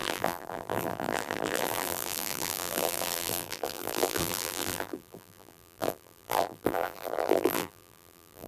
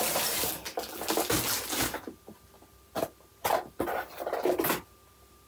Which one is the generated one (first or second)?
first